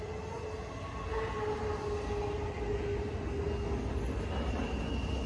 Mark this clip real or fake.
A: real